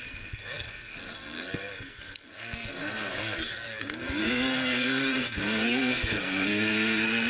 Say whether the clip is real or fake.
fake